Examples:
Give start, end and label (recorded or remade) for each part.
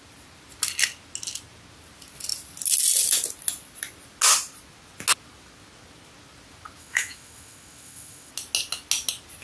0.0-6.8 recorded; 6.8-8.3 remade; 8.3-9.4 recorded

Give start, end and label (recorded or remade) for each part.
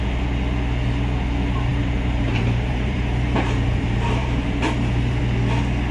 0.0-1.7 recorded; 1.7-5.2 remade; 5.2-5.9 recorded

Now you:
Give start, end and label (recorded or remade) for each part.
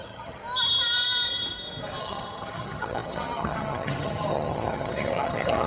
0.0-0.4 remade; 0.4-2.0 recorded; 2.0-5.7 remade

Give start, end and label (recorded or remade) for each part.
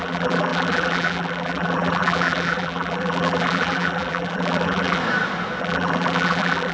0.0-5.0 remade; 5.0-5.6 recorded; 5.6-6.7 remade